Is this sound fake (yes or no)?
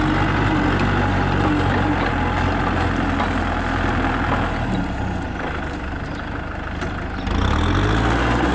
no